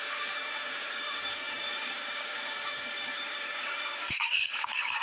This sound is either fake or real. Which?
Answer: fake